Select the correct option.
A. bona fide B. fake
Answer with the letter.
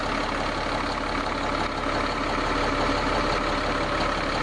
A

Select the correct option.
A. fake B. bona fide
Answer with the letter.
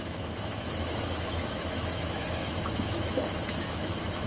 A